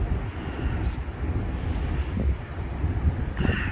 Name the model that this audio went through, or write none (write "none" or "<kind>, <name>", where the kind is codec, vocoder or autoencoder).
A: none